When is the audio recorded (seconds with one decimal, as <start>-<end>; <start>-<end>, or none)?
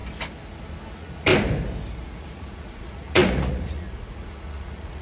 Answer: 0.0-0.9; 1.3-2.0